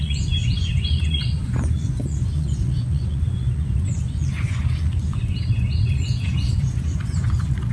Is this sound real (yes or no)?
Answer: no